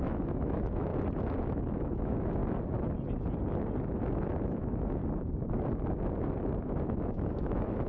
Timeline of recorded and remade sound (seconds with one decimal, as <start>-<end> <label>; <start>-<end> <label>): 0.0-0.9 remade; 0.9-1.4 recorded; 1.4-2.4 remade; 2.4-3.9 recorded; 3.9-5.0 remade; 5.0-6.6 recorded; 6.6-7.9 remade